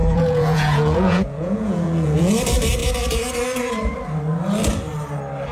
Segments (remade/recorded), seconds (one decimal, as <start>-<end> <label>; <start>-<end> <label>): 0.0-2.3 remade; 2.3-5.5 recorded